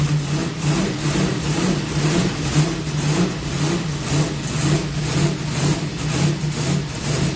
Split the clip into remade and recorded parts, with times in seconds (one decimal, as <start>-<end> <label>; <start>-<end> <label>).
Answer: 0.0-0.4 recorded; 0.4-3.2 remade; 3.2-7.4 recorded